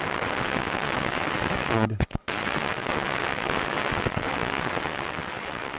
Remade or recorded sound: remade